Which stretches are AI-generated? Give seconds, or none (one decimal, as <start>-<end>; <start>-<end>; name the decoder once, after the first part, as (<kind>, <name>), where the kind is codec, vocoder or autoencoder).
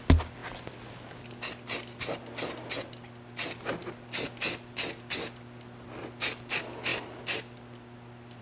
none